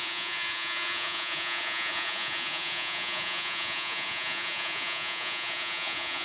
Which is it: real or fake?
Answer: fake